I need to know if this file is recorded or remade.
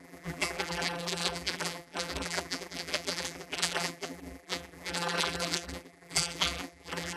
remade